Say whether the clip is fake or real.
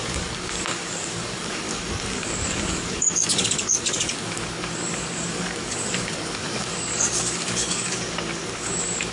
fake